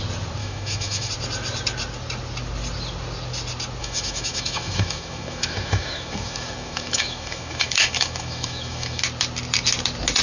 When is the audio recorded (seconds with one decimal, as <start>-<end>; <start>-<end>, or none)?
0.0-0.4; 1.1-3.8; 9.0-10.2